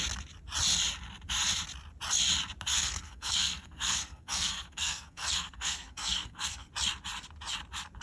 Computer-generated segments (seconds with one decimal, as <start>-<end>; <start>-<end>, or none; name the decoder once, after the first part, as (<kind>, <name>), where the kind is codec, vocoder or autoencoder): 2.7-6.7 (codec, SNAC)